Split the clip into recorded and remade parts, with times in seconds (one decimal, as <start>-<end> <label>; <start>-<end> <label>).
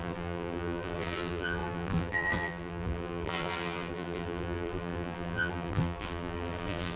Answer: 0.0-7.0 remade